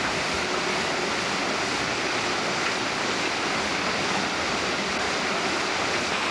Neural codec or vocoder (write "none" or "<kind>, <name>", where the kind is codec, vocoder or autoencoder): none